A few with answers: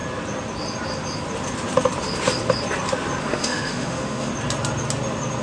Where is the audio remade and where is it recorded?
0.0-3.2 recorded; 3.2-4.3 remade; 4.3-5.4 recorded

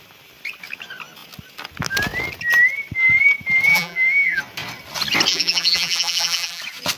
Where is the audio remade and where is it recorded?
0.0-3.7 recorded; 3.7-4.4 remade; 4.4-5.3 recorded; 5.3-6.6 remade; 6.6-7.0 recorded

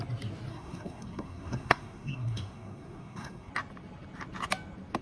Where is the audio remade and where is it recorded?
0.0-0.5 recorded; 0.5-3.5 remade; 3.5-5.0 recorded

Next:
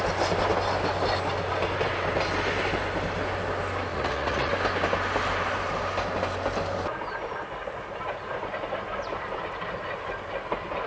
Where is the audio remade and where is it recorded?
0.0-3.9 recorded; 3.9-4.5 remade; 4.5-10.9 recorded